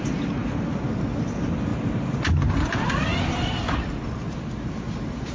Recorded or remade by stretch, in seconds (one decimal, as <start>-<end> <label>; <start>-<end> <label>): 0.0-5.3 recorded